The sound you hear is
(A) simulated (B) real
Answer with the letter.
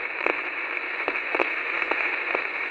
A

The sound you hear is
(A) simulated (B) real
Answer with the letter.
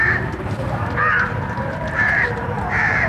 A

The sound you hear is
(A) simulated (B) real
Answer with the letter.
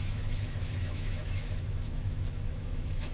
A